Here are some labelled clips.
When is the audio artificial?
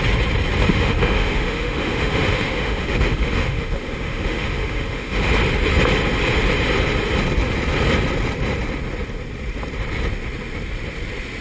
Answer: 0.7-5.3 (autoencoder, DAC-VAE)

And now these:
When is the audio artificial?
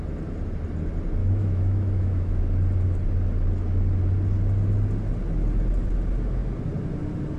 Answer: 1.2-2.4 (autoencoder, DAC-VAE)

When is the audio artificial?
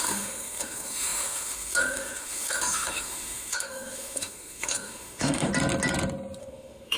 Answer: 0.0-5.5 (autoencoder, DAC-VAE); 6.4-7.0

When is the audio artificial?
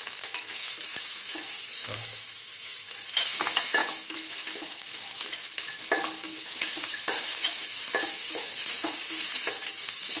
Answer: 0.0-10.2 (autoencoder, DAC-VAE)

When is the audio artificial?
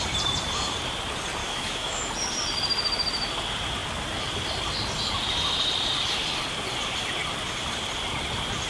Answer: 1.4-2.1 (autoencoder, DAC-VAE)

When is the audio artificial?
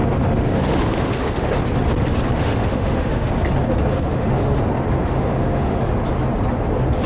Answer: 0.0-1.5 (autoencoder, DAC-VAE); 2.4-3.3; 3.9-4.6; 5.0-5.8